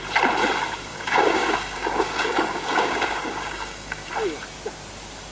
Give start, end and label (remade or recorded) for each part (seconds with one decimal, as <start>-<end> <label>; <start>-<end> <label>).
0.0-0.9 recorded; 0.9-4.1 remade; 4.1-5.3 recorded